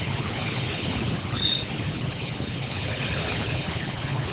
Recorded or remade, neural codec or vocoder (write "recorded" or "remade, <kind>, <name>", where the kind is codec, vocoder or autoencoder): remade, codec, HILCodec